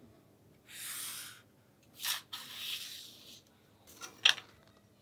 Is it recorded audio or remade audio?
recorded